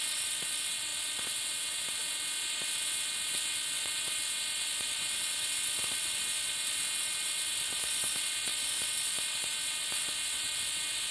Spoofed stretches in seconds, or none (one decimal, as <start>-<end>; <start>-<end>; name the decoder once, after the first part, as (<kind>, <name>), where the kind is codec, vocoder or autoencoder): 0.0-11.1 (vocoder, WaveNeXt)